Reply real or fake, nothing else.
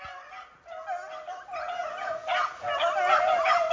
real